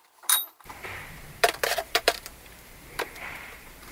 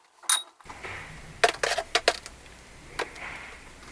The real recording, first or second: second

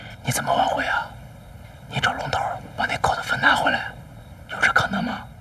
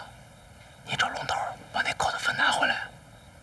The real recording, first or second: second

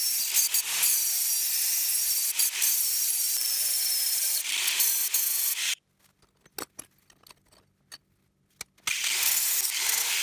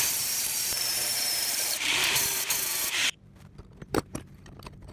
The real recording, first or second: first